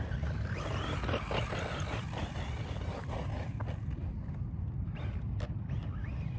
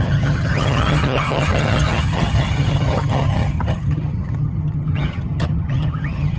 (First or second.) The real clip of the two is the first